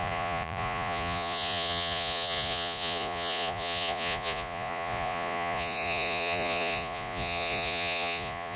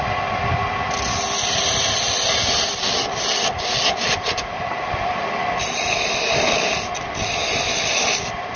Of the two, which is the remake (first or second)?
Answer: first